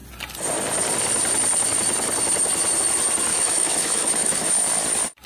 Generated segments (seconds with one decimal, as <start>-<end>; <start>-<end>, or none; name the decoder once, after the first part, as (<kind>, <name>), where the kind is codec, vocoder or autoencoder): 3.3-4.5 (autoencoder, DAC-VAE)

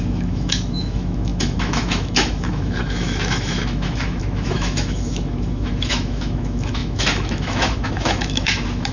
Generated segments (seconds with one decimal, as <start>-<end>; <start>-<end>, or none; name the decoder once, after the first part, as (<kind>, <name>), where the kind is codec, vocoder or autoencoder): 0.0-8.9 (autoencoder, DAC-VAE)

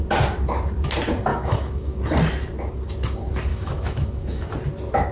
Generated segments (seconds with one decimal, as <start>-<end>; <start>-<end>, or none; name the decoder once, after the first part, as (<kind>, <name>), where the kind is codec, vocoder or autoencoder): 1.3-2.0 (autoencoder, DAC-VAE); 3.5-4.5

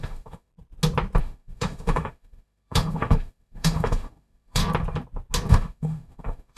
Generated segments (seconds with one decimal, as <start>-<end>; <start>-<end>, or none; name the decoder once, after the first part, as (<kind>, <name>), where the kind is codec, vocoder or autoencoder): 0.0-0.5 (autoencoder, DAC-VAE); 1.2-4.6; 5.5-6.6

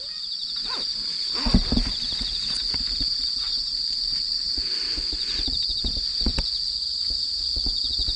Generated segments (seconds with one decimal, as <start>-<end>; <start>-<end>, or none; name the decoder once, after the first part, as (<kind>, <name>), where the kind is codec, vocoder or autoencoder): none

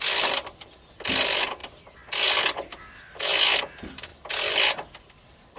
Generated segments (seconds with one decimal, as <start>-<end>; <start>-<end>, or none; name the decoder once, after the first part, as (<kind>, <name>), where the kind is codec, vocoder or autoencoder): none